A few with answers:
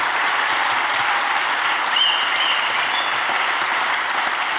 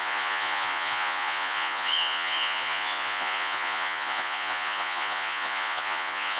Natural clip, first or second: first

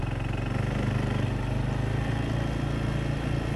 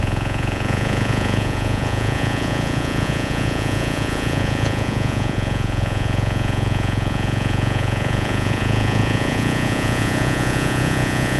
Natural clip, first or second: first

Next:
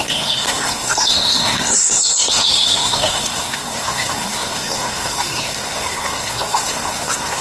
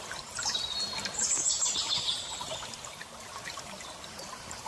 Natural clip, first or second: second